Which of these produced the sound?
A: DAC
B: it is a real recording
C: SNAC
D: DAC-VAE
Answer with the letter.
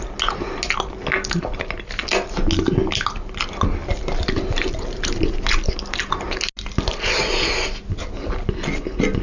B